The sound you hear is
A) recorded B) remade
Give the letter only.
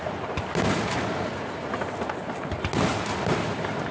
A